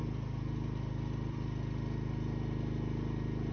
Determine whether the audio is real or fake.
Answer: real